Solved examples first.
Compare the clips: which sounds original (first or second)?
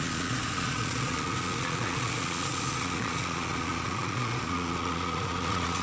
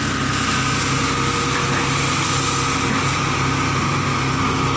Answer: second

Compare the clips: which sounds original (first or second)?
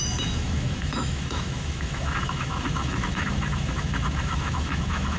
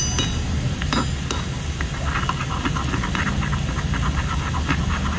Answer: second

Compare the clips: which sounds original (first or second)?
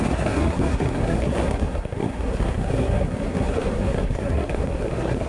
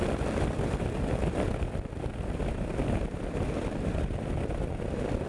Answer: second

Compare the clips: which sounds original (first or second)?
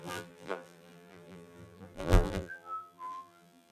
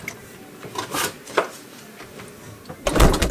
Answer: second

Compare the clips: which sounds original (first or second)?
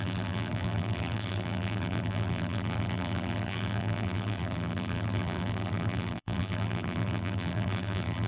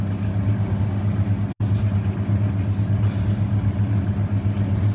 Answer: second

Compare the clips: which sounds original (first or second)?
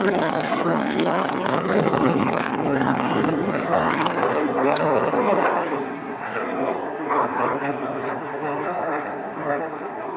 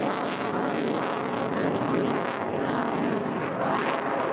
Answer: second